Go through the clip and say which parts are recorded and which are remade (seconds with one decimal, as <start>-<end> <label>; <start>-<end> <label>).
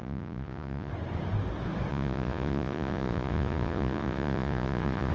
0.0-0.9 remade; 0.9-1.9 recorded; 1.9-5.1 remade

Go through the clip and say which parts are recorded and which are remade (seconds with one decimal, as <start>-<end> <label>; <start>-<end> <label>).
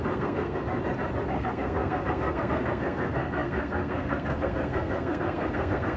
0.0-0.7 remade; 0.7-1.3 recorded; 1.3-6.0 remade